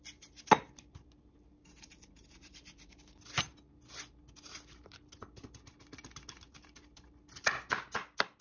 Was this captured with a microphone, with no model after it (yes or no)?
yes